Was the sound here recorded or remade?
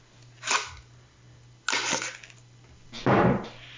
recorded